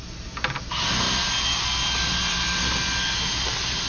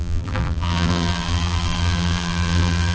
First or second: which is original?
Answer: first